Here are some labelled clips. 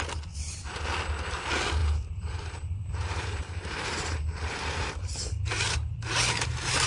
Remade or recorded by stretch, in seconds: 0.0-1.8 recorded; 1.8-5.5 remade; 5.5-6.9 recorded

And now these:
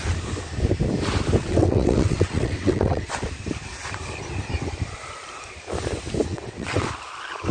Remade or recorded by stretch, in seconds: 0.0-1.4 recorded; 1.4-3.1 remade; 3.1-6.3 recorded; 6.3-6.9 remade; 6.9-7.5 recorded